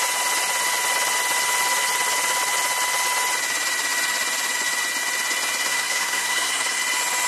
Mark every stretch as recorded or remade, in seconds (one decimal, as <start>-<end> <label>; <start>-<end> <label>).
0.0-5.7 recorded; 5.7-6.8 remade; 6.8-7.3 recorded